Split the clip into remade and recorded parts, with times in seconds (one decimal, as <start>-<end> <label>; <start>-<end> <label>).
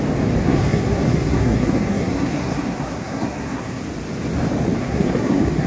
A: 0.0-0.4 recorded; 0.4-3.8 remade; 3.8-4.8 recorded; 4.8-5.7 remade